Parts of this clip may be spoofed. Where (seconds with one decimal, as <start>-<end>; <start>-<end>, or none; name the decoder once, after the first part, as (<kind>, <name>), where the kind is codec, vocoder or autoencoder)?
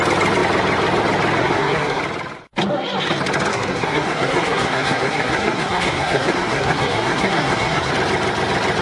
1.4-2.0 (codec, SNAC); 3.5-7.9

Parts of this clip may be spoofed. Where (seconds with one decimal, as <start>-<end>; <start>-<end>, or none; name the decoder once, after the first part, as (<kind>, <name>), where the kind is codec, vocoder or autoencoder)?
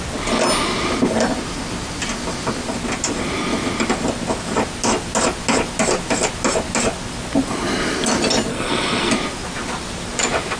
8.5-9.1 (codec, SNAC)